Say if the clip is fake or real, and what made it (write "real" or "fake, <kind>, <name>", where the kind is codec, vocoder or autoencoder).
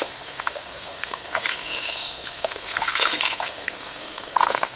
fake, codec, SNAC